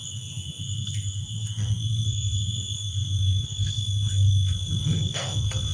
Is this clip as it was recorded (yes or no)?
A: no